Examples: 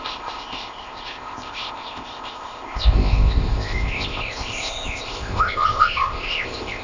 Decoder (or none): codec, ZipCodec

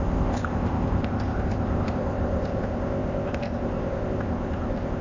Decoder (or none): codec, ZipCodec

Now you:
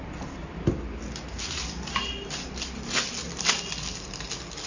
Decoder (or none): none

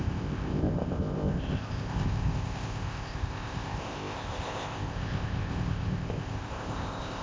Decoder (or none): codec, ZipCodec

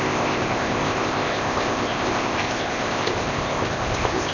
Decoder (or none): codec, ZipCodec